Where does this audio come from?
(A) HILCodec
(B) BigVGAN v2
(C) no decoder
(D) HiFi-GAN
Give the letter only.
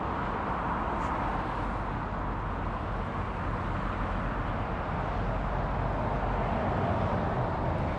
C